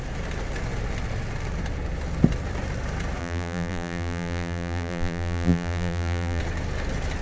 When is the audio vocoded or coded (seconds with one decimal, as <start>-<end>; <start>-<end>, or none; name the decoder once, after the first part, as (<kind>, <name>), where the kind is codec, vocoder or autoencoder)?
3.2-6.4 (vocoder, BigVGAN v2)

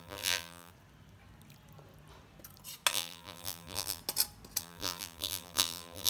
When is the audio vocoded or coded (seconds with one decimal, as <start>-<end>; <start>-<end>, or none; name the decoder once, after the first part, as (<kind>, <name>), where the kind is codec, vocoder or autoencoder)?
0.0-0.7 (vocoder, BigVGAN v2); 2.9-4.0; 4.6-6.1

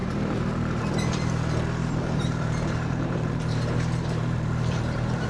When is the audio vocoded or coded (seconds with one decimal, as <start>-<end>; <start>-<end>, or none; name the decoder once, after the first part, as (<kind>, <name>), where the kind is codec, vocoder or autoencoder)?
0.0-1.3 (vocoder, BigVGAN v2); 1.8-5.3

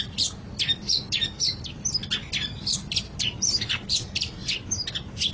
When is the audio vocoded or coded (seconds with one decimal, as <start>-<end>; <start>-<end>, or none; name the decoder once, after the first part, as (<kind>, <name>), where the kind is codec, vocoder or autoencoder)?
0.0-2.0 (vocoder, BigVGAN v2); 2.6-5.3

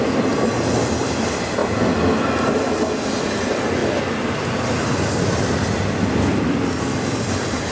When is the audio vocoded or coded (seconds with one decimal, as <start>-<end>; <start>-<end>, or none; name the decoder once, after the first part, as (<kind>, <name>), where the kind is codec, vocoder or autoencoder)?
none

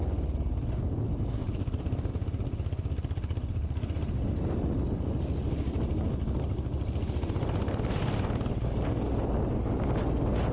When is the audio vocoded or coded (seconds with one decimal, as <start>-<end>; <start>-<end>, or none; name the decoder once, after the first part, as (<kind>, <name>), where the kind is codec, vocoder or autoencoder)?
1.4-2.1 (vocoder, BigVGAN v2)

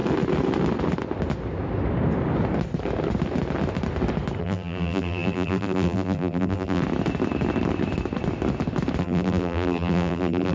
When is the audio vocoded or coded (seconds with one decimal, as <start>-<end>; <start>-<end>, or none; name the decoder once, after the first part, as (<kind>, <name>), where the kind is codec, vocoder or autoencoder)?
4.4-6.8 (vocoder, BigVGAN v2); 9.0-10.5

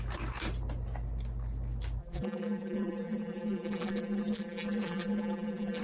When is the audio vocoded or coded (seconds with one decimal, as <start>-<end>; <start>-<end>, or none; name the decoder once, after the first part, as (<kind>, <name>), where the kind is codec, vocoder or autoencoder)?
2.0-5.8 (vocoder, BigVGAN v2)